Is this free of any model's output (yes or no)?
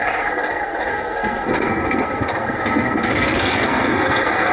no